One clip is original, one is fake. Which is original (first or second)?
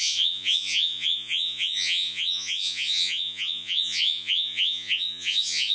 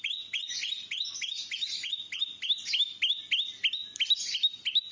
second